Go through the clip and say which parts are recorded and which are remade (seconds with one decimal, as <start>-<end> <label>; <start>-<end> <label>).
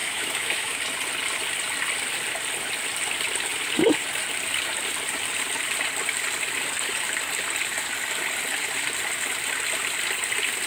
0.0-0.8 remade; 0.8-10.7 recorded